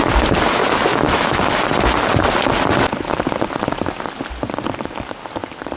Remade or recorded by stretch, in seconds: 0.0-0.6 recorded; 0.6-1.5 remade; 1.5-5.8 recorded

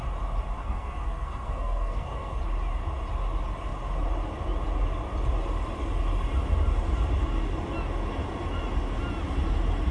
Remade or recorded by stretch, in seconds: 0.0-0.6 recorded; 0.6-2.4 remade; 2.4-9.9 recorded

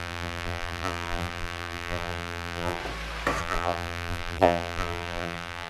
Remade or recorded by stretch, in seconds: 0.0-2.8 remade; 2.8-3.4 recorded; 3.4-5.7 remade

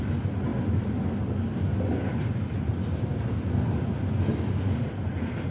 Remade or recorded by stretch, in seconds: 0.0-5.5 recorded